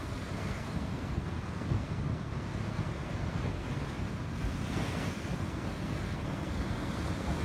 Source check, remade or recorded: remade